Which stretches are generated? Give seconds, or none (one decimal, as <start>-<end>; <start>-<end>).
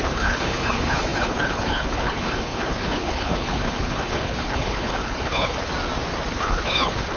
0.0-5.7; 6.3-7.2